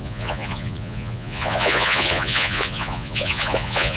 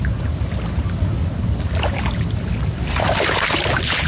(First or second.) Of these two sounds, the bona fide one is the second